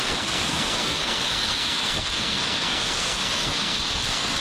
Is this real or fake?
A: fake